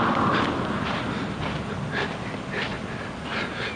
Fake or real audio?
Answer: real